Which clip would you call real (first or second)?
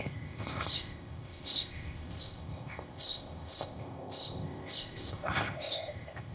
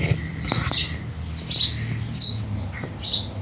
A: second